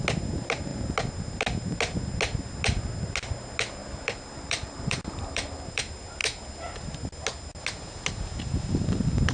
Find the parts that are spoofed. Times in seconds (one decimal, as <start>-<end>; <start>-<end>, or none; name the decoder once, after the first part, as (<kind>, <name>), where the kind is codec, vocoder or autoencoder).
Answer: 3.8-5.8 (vocoder, BigVGAN v2)